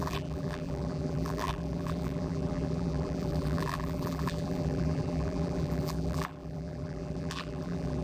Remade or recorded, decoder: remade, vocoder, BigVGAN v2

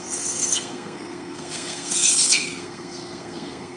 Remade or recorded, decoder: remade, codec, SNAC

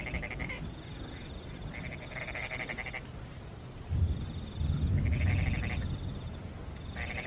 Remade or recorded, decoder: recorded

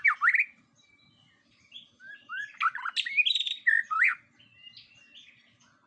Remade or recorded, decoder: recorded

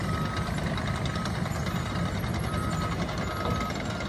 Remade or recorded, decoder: recorded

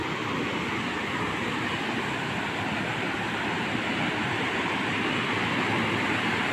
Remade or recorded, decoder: recorded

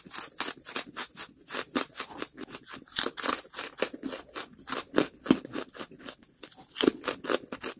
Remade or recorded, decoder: recorded